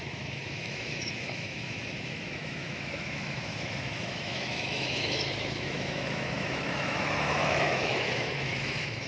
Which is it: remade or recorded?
remade